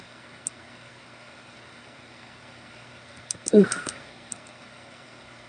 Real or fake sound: fake